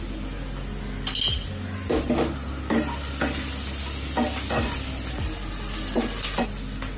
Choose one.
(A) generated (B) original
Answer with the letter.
B